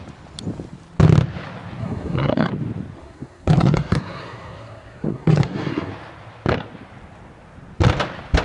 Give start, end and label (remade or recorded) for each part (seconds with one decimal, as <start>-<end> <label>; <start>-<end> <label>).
0.0-1.8 recorded; 1.8-2.5 remade; 2.5-3.0 recorded; 3.0-5.9 remade; 5.9-8.4 recorded